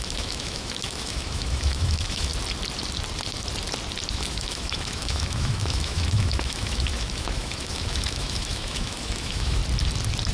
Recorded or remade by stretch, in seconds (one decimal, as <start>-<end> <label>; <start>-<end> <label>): 0.0-2.3 remade; 2.3-4.1 recorded; 4.1-9.6 remade; 9.6-10.3 recorded